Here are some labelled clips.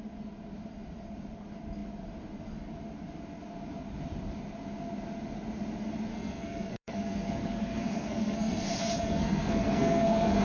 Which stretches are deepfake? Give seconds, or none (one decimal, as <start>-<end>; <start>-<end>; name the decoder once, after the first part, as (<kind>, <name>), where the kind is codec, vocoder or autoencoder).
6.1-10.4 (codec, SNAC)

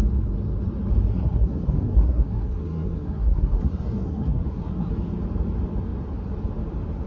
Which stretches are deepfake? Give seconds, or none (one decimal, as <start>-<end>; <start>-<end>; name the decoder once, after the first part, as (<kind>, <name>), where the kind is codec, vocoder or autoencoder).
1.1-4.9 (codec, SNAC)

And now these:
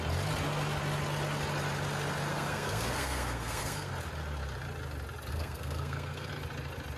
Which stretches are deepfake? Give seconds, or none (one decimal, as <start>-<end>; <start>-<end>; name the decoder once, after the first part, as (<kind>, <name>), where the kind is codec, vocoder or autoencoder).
2.3-3.9 (codec, SNAC); 5.3-6.3

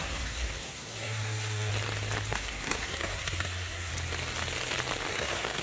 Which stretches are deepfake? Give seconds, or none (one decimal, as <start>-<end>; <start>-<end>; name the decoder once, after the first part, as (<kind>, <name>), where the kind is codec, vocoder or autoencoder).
0.0-1.7 (codec, SNAC); 2.3-3.9; 5.1-5.6